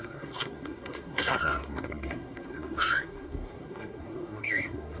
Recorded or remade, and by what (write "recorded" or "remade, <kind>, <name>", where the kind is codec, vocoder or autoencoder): remade, codec, SNAC